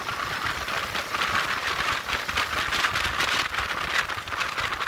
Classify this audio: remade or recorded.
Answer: recorded